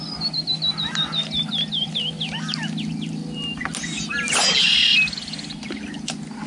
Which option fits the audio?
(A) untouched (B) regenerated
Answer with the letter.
A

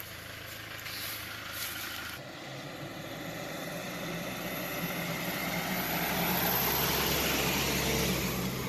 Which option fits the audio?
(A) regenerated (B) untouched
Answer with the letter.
B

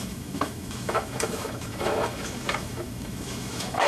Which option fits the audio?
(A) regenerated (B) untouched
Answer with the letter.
A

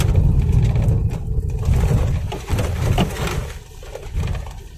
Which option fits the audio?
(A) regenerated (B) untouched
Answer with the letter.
B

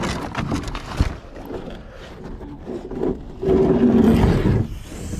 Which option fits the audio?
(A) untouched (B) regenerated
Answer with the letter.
A